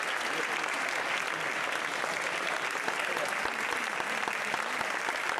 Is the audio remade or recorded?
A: recorded